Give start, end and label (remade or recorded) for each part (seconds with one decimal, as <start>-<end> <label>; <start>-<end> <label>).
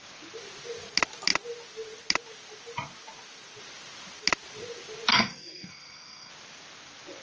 0.0-5.1 recorded; 5.1-6.3 remade; 6.3-7.2 recorded